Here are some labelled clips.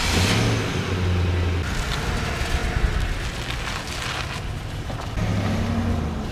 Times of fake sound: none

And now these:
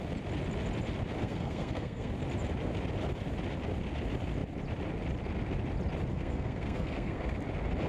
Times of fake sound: 1.2-2.1 (codec, SNAC); 6.1-7.3

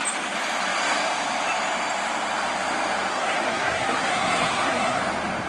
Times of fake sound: 3.1-5.0 (codec, SNAC)